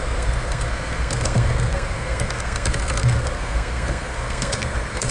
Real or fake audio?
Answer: fake